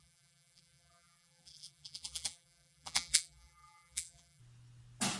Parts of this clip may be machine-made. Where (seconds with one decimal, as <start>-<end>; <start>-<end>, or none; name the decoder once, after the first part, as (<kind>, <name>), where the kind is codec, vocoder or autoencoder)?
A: 0.0-4.4 (vocoder, BigVGAN v2)